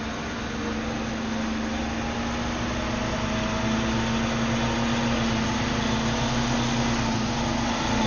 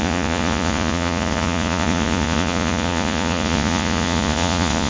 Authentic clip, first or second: first